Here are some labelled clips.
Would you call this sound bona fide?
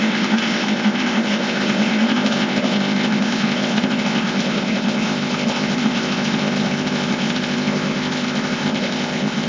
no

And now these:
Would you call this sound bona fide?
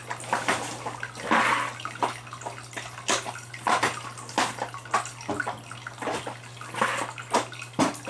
yes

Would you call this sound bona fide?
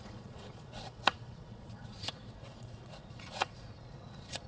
no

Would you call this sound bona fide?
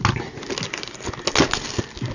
yes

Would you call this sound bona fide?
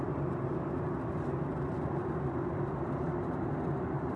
yes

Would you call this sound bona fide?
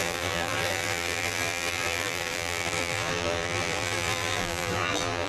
no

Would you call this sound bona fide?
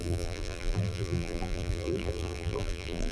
no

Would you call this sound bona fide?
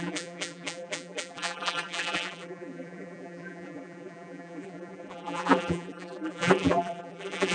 no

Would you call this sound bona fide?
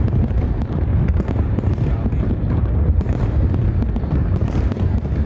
yes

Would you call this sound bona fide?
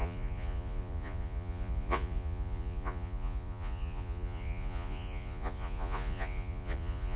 no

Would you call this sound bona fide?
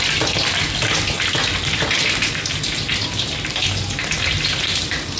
yes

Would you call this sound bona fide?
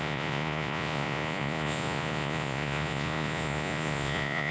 no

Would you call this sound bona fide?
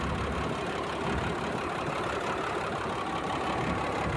yes